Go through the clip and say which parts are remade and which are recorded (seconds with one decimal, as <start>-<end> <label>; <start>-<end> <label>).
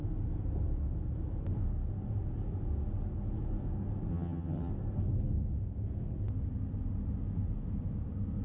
0.0-4.1 recorded; 4.1-4.7 remade; 4.7-8.4 recorded